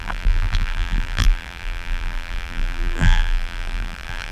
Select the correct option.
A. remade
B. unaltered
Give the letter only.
A